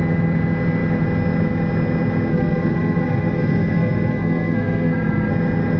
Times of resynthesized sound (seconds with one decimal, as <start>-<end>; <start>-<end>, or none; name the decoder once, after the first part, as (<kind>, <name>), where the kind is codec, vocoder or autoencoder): 2.3-5.3 (codec, SNAC)

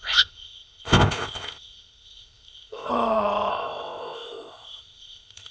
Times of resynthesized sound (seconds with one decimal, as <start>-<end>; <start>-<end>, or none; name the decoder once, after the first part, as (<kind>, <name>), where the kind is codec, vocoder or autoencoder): 0.0-2.9 (codec, ZipCodec); 3.5-5.5

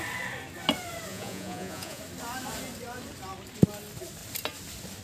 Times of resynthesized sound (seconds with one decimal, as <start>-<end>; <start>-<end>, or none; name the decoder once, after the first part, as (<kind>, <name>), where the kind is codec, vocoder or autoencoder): 1.1-2.0 (vocoder, Vocos)

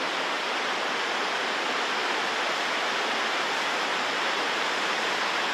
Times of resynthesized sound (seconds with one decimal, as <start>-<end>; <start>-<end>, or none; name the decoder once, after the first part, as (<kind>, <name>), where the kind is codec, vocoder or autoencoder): 3.9-4.9 (vocoder, BigVGAN v2)

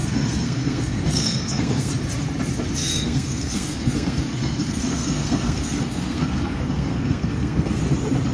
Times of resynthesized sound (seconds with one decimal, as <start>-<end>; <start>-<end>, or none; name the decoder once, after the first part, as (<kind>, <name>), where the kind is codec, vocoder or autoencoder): 0.0-1.9 (codec, SNAC); 2.8-7.8

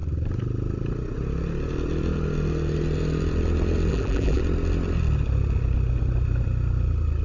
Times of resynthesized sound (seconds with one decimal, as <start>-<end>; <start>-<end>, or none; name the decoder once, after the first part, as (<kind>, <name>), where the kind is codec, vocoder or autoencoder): 3.9-4.4 (vocoder, BigVGAN v2)